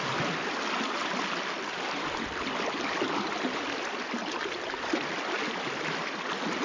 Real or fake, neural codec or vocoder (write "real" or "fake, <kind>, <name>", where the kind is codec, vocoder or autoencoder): fake, vocoder, BigVGAN v2